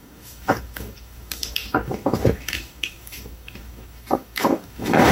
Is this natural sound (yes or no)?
no